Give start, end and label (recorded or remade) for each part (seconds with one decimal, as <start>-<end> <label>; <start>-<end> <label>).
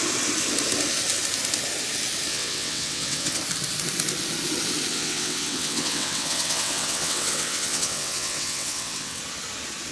0.0-2.3 recorded; 2.3-3.4 remade; 3.4-4.9 recorded; 4.9-9.2 remade; 9.2-9.9 recorded